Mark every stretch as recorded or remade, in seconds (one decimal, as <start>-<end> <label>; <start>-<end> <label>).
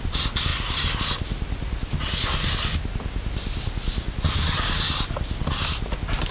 0.0-6.3 recorded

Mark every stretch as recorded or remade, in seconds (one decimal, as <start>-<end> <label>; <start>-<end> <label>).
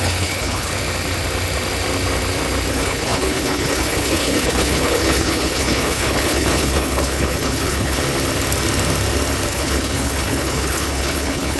0.0-0.7 remade; 0.7-2.7 recorded; 2.7-8.0 remade; 8.0-9.5 recorded; 9.5-11.6 remade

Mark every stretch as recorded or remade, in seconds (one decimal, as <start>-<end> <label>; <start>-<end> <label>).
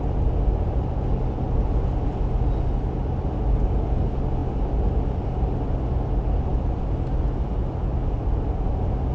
0.0-9.1 recorded